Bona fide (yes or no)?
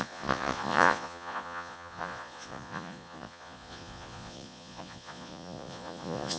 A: no